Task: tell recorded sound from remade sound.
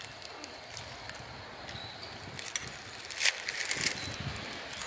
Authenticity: recorded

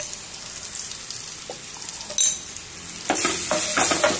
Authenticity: recorded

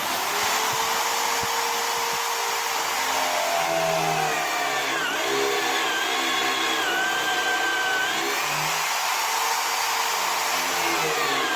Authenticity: recorded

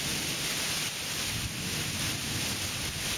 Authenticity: recorded